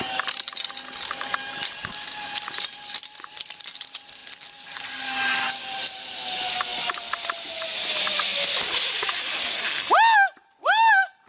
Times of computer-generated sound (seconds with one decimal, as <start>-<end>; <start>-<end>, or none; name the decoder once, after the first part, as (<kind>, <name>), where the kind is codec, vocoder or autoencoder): none

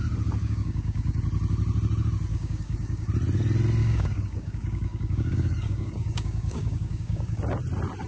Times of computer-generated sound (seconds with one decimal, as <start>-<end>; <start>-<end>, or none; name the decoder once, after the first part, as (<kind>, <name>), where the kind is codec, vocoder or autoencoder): 0.4-1.2 (codec, DAC); 2.3-3.1; 3.8-7.4

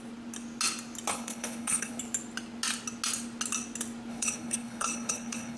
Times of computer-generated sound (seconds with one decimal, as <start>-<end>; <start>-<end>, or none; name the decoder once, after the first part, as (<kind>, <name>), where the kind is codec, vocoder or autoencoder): 1.1-2.0 (codec, HILCodec); 4.1-5.6

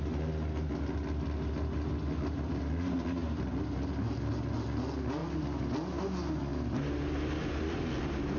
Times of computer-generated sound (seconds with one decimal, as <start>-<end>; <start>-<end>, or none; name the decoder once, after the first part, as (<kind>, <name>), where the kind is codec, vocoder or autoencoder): none

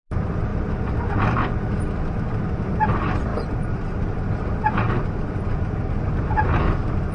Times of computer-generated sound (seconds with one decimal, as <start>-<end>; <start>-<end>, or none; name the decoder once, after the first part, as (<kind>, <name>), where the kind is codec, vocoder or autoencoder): none

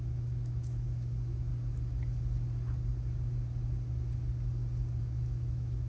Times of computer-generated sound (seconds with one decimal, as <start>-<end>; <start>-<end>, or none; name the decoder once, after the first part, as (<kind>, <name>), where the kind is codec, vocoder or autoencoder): 0.0-1.5 (autoencoder, DAC-VAE); 5.0-5.9

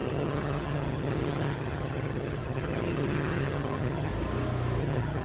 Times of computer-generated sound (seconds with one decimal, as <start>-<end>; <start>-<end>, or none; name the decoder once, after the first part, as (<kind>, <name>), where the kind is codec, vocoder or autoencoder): 0.0-4.1 (vocoder, HiFi-GAN); 4.8-5.2